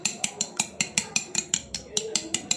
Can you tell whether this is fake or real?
fake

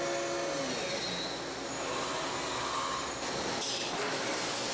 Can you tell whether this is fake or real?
real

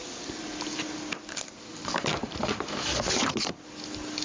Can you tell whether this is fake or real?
real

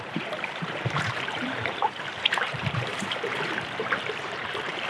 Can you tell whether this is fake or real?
fake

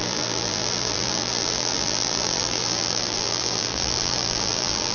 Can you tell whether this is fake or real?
fake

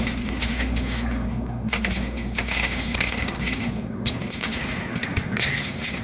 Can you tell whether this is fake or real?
fake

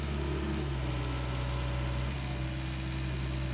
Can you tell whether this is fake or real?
real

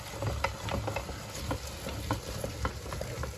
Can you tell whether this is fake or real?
real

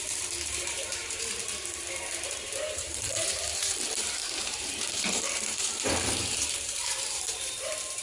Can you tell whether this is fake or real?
fake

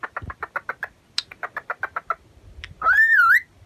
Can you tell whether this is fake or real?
real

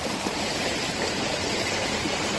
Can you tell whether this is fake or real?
fake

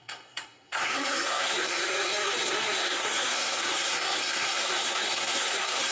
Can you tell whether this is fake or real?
fake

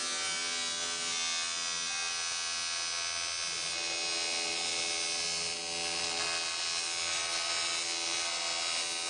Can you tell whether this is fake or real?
real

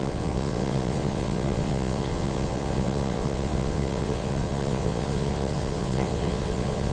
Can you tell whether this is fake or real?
fake